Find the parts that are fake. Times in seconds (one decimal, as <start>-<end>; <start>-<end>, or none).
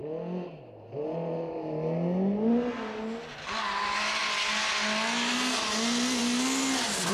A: none